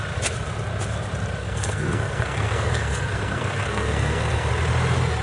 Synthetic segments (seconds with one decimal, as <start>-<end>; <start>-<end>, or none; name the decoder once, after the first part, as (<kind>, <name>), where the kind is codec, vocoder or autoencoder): 1.4-4.5 (codec, SNAC)